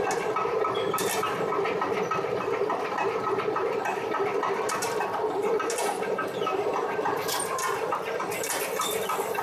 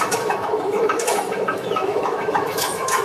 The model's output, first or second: second